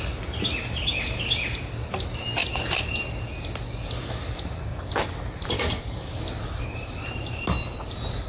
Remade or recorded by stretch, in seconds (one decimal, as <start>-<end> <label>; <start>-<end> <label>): 0.0-8.3 recorded